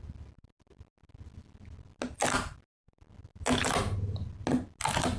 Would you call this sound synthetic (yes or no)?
no